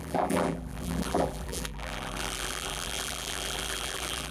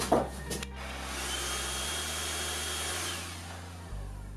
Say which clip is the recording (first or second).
second